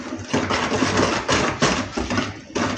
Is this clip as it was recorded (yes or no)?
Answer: yes